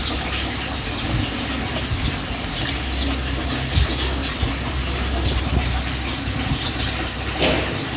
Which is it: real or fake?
real